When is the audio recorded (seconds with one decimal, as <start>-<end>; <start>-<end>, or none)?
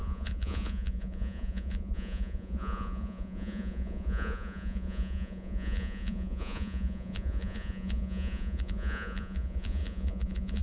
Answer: none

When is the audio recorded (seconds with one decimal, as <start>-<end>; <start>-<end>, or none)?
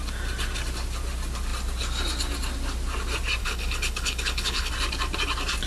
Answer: 0.0-3.4; 4.7-5.7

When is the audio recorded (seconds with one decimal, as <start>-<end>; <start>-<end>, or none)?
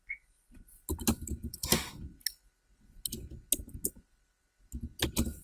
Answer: 0.0-5.4